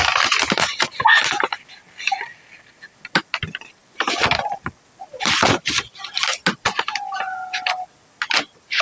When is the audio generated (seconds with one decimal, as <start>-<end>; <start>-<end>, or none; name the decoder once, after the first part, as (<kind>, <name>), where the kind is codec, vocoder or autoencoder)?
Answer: 3.8-5.8 (vocoder, BigVGAN v2)